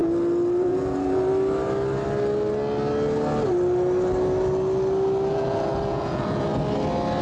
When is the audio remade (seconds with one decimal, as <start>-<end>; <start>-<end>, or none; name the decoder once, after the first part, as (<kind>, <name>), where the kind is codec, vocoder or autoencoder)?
0.6-1.3 (vocoder, Vocos); 5.3-6.5